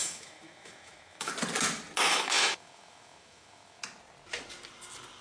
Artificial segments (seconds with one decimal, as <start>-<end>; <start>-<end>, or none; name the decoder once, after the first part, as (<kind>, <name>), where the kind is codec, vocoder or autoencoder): 0.0-1.3 (autoencoder, DAC-VAE); 2.1-3.8